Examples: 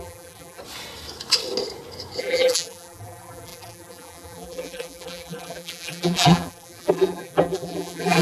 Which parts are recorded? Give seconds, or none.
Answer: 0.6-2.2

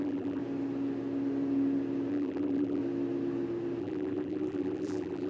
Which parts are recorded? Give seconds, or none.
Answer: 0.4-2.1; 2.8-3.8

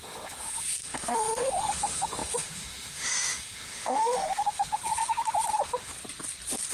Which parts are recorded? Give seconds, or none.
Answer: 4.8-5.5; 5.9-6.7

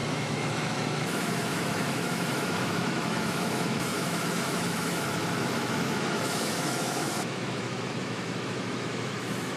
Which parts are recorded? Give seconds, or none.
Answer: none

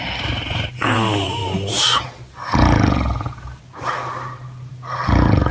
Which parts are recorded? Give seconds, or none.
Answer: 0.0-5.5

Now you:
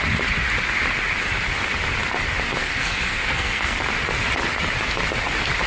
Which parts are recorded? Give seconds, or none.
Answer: 0.0-2.6; 3.8-5.7

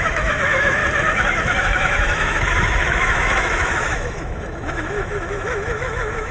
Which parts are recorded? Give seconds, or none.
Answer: 0.8-1.6

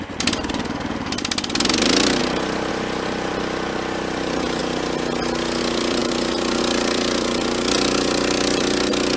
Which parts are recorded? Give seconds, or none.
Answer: 2.2-2.7; 4.6-5.6